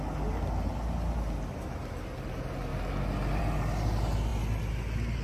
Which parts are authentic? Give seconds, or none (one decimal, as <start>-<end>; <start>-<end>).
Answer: 0.0-5.2